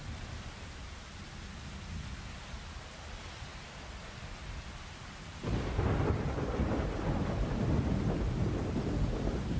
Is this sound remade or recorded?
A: recorded